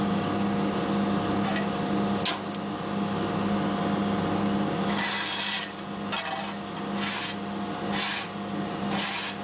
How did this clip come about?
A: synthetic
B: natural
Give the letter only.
B